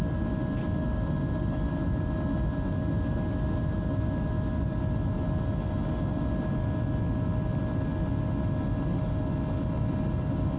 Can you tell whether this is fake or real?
real